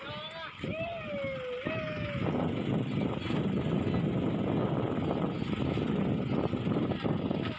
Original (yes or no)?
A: yes